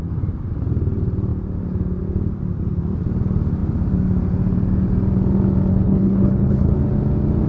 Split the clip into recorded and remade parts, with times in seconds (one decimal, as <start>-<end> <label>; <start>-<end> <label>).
0.0-5.7 recorded; 5.7-6.8 remade; 6.8-7.5 recorded